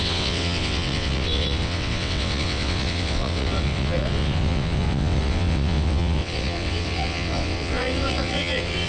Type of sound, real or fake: fake